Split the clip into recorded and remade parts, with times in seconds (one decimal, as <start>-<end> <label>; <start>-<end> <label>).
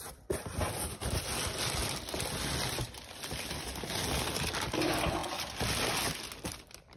0.0-7.0 recorded